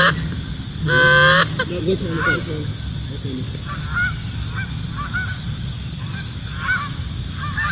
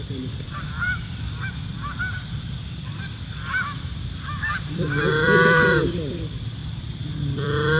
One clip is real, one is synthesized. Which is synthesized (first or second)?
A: second